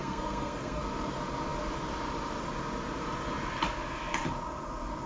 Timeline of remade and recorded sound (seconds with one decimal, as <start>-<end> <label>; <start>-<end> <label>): 0.0-0.8 remade; 0.8-5.1 recorded